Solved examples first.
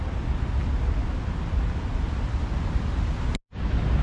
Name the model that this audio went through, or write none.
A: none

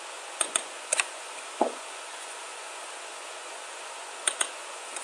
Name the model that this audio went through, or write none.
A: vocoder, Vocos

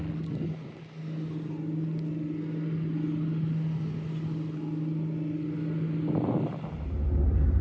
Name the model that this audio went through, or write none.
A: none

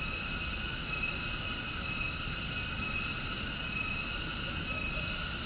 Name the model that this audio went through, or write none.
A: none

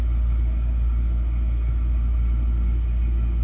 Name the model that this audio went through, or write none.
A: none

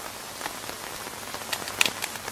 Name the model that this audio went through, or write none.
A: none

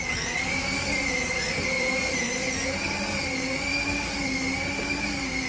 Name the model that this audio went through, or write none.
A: none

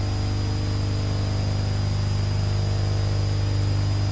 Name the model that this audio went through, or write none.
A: none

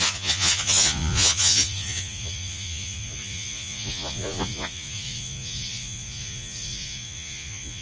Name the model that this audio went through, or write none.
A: vocoder, Vocos